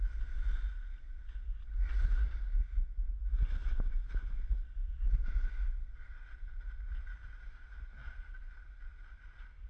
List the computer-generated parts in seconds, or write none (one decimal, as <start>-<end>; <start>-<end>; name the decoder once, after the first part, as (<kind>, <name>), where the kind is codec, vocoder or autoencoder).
none